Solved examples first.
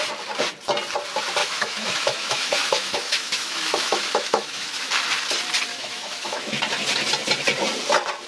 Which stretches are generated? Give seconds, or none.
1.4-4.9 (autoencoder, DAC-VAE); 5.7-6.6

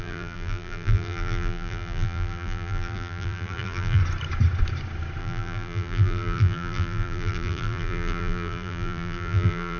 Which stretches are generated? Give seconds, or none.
0.0-4.0 (vocoder, BigVGAN v2); 5.2-9.8

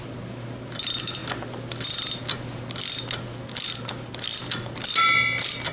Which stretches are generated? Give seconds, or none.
none

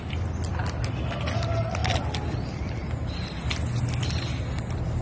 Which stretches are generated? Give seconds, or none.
none

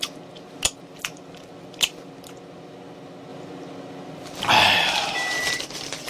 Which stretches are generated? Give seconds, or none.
none

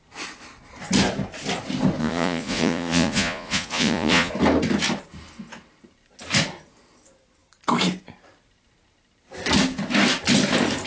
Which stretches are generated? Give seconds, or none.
2.0-4.3 (vocoder, Vocos)

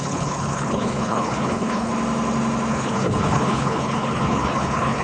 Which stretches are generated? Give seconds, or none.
0.0-1.9 (codec, HILCodec); 2.7-5.0